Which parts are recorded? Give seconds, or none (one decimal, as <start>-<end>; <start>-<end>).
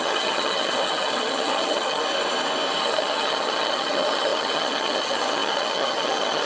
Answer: 2.0-2.8